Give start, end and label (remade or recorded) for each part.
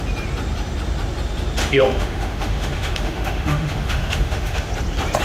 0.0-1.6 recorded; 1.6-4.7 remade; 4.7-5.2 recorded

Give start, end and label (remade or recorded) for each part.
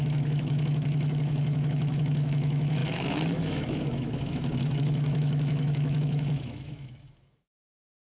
0.0-8.2 remade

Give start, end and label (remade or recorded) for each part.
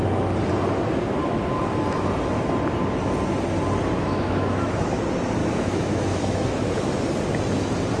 0.0-3.9 recorded; 3.9-5.0 remade; 5.0-5.4 recorded; 5.4-6.9 remade; 6.9-8.0 recorded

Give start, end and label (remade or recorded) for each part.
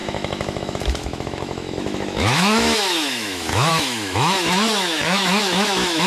0.0-6.1 remade